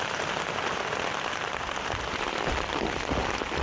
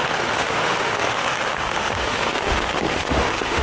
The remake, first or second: second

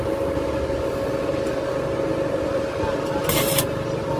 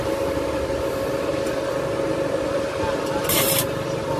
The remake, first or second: second